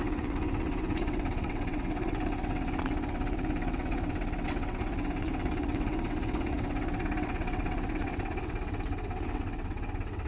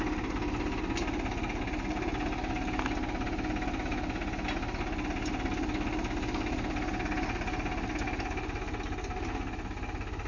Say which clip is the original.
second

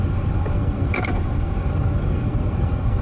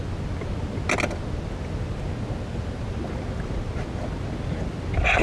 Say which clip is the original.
second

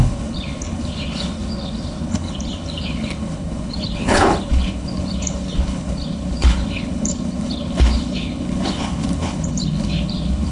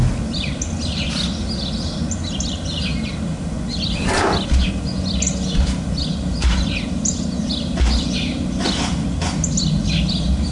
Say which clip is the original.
second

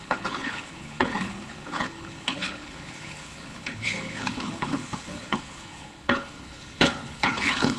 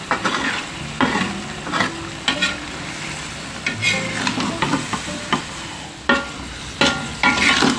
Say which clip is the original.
second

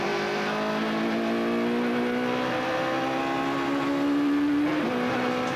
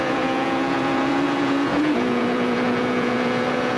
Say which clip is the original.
first